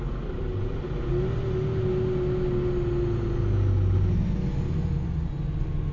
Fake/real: real